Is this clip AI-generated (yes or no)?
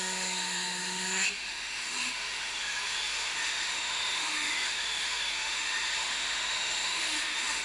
yes